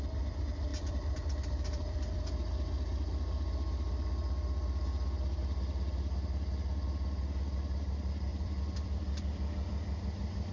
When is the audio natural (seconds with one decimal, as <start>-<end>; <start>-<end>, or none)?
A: 0.0-0.7; 2.2-8.3; 9.7-10.5